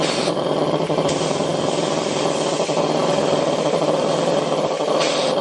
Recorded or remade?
recorded